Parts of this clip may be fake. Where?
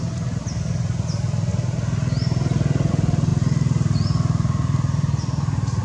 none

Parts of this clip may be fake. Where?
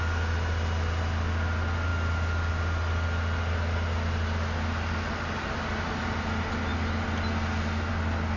none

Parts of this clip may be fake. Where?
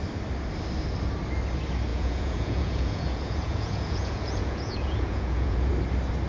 1.9-5.7 (vocoder, Vocos)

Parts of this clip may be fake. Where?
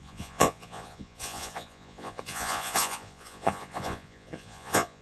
0.0-5.0 (vocoder, Vocos)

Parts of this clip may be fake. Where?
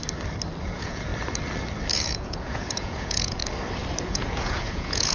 0.6-1.1 (vocoder, Vocos); 1.9-3.4; 4.0-5.1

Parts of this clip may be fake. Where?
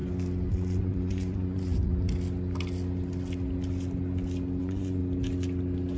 0.5-1.9 (vocoder, Vocos); 4.6-5.0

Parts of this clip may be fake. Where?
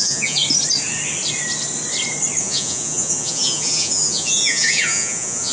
0.0-0.4 (vocoder, Vocos); 2.4-5.5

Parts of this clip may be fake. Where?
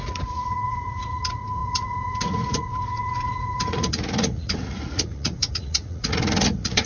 0.0-6.9 (vocoder, Vocos)